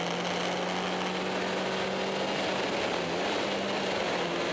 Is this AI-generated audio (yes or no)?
no